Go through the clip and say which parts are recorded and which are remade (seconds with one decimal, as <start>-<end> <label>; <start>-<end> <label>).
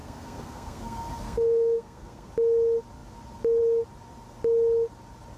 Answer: 0.0-2.3 remade; 2.3-5.4 recorded